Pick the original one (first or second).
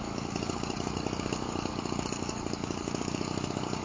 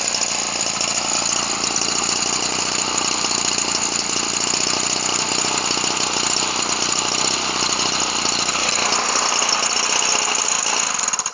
second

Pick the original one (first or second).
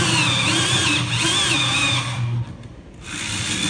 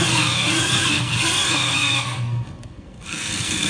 first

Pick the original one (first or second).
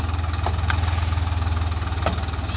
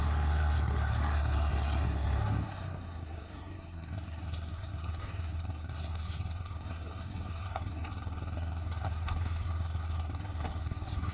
first